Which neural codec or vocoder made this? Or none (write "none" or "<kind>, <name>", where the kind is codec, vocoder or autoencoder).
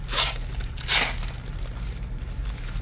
none